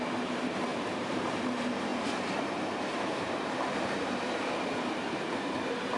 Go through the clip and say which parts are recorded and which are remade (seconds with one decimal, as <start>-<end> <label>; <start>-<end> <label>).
0.0-6.0 remade